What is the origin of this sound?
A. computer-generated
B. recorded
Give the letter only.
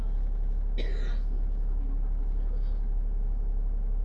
B